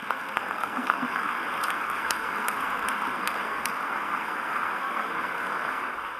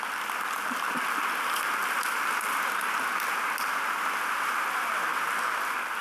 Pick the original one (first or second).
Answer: second